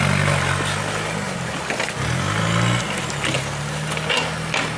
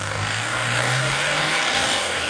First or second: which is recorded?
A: first